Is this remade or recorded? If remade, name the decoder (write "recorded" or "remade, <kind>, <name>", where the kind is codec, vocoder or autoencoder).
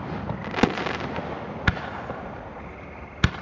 recorded